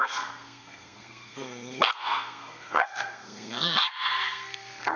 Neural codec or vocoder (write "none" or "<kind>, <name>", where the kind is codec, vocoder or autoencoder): codec, SNAC